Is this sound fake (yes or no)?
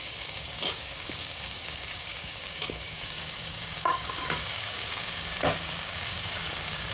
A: yes